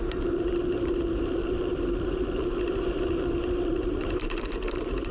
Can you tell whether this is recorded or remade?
remade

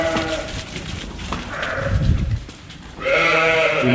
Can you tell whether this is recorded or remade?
remade